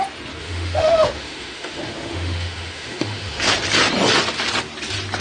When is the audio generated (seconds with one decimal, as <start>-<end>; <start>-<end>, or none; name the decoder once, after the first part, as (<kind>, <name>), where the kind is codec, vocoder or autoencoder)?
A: 0.4-3.5 (autoencoder, DAC-VAE)